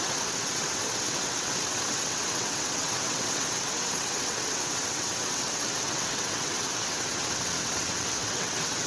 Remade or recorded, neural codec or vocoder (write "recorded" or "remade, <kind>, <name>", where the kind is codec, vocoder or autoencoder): remade, vocoder, WaveNeXt